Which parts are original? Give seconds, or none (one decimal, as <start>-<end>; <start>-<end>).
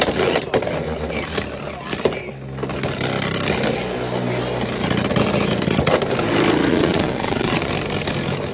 0.0-6.7; 7.7-8.5